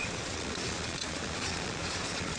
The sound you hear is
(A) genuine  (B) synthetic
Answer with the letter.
B